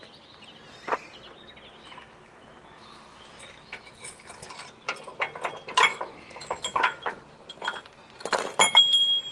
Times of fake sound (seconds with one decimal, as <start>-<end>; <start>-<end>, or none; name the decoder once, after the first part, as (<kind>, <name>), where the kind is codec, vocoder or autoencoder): 1.8-4.5 (autoencoder, DAC-VAE); 5.9-7.2

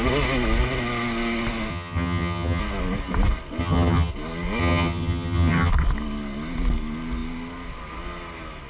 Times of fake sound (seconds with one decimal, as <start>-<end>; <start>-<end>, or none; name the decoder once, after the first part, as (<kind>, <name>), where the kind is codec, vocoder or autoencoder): 1.7-2.6 (vocoder, HiFi-GAN); 3.6-4.1; 4.6-5.7

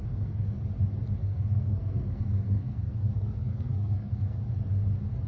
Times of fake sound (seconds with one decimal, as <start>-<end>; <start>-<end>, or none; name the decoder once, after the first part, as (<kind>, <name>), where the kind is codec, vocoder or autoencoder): 0.0-0.6 (codec, SNAC); 1.2-4.4

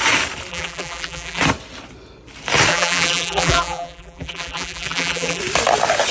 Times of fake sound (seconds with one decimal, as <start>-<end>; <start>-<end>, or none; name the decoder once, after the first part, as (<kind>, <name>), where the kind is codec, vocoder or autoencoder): 0.5-1.4 (vocoder, BigVGAN v2); 2.7-5.4

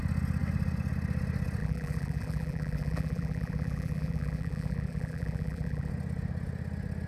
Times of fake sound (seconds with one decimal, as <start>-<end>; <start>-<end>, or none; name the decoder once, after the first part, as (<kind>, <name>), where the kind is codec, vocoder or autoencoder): 1.6-5.9 (vocoder, BigVGAN v2)

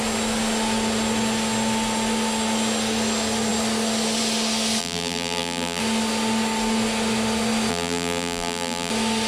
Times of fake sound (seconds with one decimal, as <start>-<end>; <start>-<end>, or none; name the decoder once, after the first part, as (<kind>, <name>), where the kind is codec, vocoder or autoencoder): 4.8-5.8 (vocoder, BigVGAN v2); 7.7-8.9

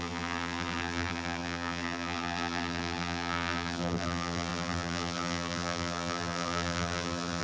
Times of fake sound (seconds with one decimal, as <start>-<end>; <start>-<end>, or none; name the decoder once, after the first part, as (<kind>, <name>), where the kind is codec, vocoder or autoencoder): 0.0-7.4 (vocoder, BigVGAN v2)